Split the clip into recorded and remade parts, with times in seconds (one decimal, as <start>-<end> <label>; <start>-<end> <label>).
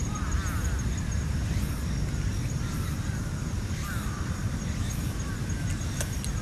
0.0-2.3 recorded; 2.3-4.9 remade; 4.9-6.4 recorded